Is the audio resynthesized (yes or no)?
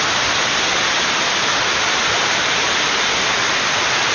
no